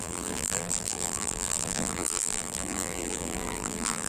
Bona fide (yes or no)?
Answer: no